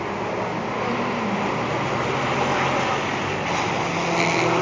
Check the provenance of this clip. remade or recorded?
recorded